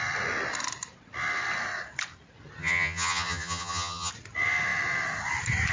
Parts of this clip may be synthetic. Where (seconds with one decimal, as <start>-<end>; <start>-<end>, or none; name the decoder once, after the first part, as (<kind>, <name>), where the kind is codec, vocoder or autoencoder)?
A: 2.6-4.1 (vocoder, HiFi-GAN)